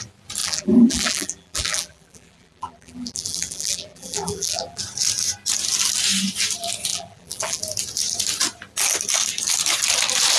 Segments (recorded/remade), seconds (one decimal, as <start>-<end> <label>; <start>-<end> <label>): 0.0-0.4 recorded; 0.4-4.8 remade; 4.8-6.9 recorded; 6.9-7.6 remade; 7.6-10.4 recorded